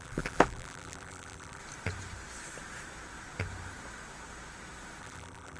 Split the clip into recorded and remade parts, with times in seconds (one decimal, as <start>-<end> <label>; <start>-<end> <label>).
0.0-1.6 remade; 1.6-5.0 recorded; 5.0-5.6 remade